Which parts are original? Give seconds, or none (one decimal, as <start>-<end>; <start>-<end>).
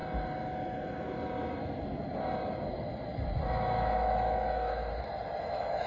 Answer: 0.0-3.5; 4.8-5.4